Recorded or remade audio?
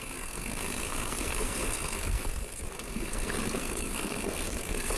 remade